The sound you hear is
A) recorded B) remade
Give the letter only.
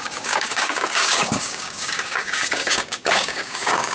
B